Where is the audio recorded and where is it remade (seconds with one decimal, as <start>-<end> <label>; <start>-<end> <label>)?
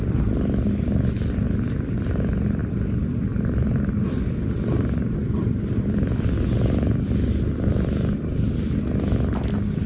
0.0-2.6 recorded; 2.6-6.4 remade; 6.4-9.9 recorded